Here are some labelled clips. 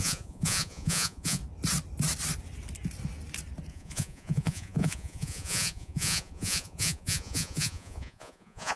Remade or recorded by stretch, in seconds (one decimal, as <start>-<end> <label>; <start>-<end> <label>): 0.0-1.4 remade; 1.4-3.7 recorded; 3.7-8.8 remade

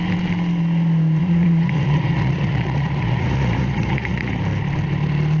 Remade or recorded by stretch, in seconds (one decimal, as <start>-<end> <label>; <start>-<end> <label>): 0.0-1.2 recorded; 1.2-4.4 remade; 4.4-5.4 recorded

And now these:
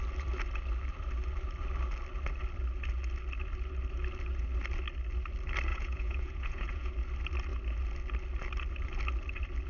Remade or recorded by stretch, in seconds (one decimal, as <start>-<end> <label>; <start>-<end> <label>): 0.0-5.7 recorded; 5.7-6.9 remade; 6.9-9.7 recorded

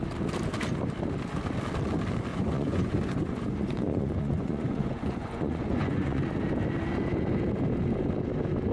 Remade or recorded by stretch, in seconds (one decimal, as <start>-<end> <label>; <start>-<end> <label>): 0.0-2.3 recorded; 2.3-6.2 remade; 6.2-8.7 recorded